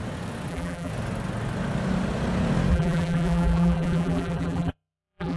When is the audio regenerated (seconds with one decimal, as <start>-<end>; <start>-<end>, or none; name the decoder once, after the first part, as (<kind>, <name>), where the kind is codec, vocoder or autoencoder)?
0.5-0.9 (vocoder, BigVGAN v2); 2.7-5.4